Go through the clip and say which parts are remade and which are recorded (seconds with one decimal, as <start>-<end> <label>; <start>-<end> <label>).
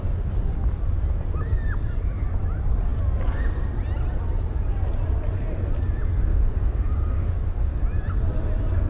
0.0-6.3 recorded; 6.3-7.8 remade; 7.8-8.9 recorded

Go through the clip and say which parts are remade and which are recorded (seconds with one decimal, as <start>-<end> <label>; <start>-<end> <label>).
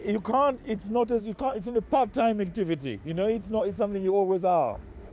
0.0-1.2 recorded; 1.2-3.1 remade; 3.1-3.6 recorded; 3.6-5.1 remade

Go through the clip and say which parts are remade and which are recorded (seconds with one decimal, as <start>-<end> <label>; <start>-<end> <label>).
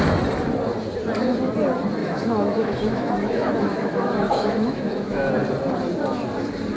0.0-2.0 recorded; 2.0-5.3 remade; 5.3-6.8 recorded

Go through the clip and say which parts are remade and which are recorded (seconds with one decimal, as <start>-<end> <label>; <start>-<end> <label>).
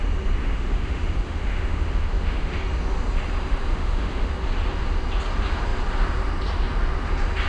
0.0-0.4 recorded; 0.4-2.6 remade; 2.6-3.7 recorded; 3.7-4.3 remade; 4.3-7.5 recorded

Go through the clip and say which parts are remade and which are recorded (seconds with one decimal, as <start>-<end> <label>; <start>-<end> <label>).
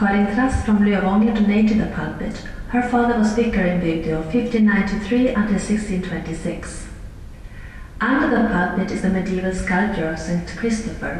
0.0-9.7 recorded; 9.7-11.2 remade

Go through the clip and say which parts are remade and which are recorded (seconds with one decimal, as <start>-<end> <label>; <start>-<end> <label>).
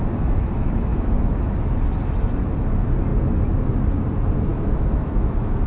0.0-0.9 recorded; 0.9-1.5 remade; 1.5-4.5 recorded; 4.5-5.2 remade; 5.2-5.7 recorded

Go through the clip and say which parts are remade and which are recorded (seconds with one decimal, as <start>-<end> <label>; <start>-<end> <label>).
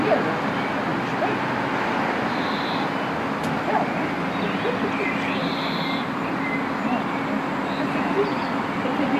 0.0-9.2 recorded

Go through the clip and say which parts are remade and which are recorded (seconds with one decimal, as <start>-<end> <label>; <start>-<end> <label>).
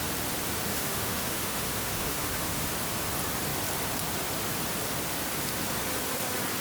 0.0-0.7 recorded; 0.7-2.7 remade; 2.7-6.6 recorded